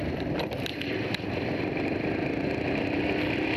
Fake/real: real